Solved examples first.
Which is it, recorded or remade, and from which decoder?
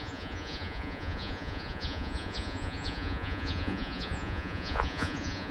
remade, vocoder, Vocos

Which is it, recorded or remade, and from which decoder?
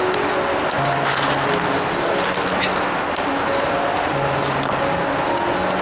recorded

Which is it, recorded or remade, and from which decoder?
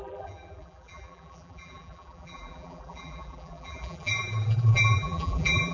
remade, vocoder, BigVGAN v2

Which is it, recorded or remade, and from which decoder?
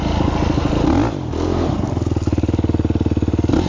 recorded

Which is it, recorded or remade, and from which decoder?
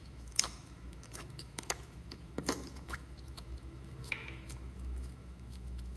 remade, autoencoder, DAC-VAE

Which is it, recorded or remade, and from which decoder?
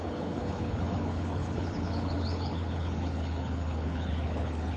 remade, codec, HILCodec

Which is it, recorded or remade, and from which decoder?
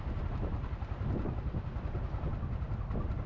recorded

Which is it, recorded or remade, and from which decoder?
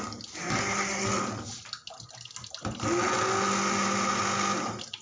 recorded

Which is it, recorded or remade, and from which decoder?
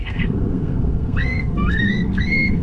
remade, codec, SNAC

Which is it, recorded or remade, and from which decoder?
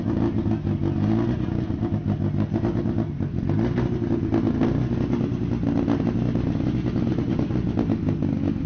recorded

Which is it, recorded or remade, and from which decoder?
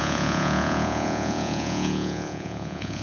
remade, vocoder, Vocos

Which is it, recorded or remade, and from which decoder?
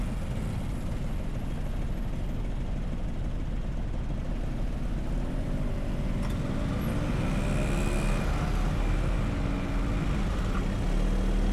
recorded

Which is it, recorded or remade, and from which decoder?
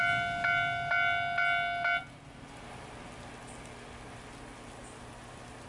recorded